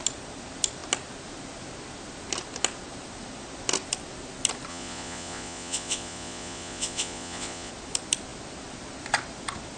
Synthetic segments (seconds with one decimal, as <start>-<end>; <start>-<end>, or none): 4.7-7.7